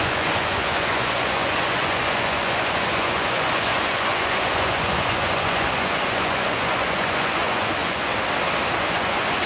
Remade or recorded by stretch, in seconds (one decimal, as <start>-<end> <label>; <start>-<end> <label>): 0.0-8.1 remade; 8.1-8.8 recorded; 8.8-9.5 remade